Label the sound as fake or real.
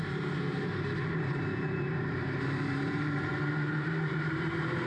fake